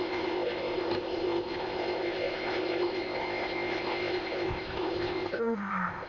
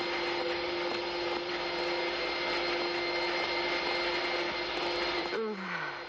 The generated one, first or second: first